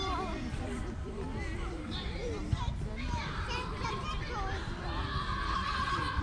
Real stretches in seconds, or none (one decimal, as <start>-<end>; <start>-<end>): none